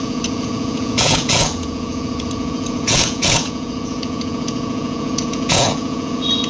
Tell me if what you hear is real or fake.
fake